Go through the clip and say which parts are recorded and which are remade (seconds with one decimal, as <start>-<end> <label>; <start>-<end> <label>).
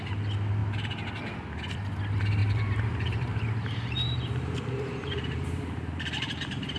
0.0-2.4 recorded; 2.4-6.8 remade